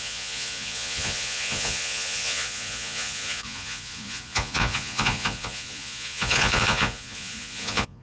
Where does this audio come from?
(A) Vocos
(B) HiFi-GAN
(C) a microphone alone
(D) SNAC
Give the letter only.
A